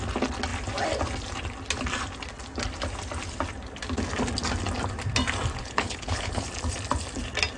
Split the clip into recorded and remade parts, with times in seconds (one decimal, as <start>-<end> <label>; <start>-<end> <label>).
0.0-5.6 recorded; 5.6-6.4 remade; 6.4-7.6 recorded